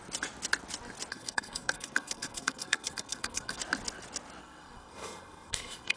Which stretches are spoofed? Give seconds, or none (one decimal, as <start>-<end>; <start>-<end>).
1.1-3.6; 4.4-6.0